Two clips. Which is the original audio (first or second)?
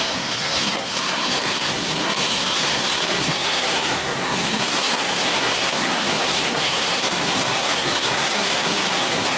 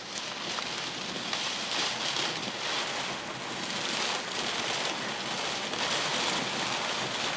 second